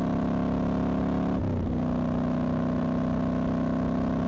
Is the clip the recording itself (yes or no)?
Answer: yes